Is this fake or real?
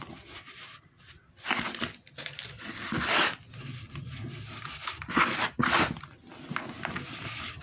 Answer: real